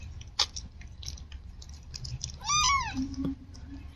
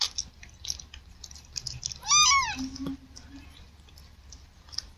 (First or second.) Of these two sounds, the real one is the second